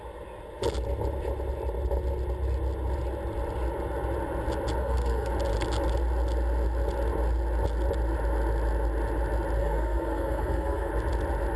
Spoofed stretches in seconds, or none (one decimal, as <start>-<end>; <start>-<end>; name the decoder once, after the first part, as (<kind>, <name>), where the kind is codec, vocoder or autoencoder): 4.8-5.3 (codec, SNAC); 9.6-10.9

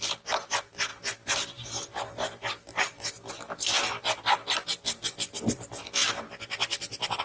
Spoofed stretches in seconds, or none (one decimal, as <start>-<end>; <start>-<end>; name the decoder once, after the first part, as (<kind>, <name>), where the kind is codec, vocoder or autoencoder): none

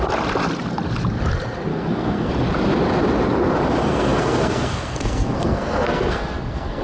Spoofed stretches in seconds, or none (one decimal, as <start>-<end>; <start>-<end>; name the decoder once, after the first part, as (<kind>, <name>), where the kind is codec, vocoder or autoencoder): 1.7-2.3 (codec, SNAC); 3.8-6.8

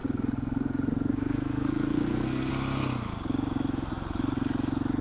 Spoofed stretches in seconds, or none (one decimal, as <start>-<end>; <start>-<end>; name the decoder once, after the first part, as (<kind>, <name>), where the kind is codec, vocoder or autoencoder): 0.0-2.5 (codec, SNAC)